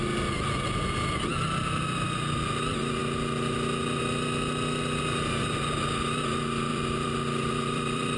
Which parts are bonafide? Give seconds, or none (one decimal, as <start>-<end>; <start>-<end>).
0.0-6.7